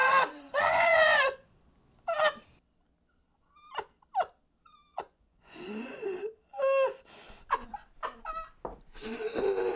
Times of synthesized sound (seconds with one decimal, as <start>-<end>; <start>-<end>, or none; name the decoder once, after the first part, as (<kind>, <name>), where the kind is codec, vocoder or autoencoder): 0.0-1.6 (vocoder, Vocos); 4.9-6.2